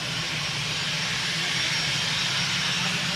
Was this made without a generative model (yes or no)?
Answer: yes